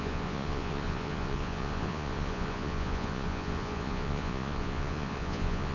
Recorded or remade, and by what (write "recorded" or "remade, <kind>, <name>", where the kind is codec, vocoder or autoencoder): remade, vocoder, Vocos